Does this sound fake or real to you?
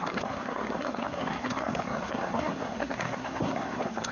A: fake